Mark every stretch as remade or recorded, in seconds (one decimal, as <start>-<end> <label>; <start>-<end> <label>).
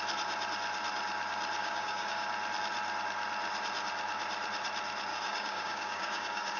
0.0-1.6 recorded; 1.6-2.3 remade; 2.3-5.1 recorded; 5.1-6.6 remade